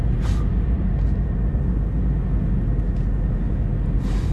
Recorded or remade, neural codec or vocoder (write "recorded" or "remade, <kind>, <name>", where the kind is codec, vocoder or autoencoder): recorded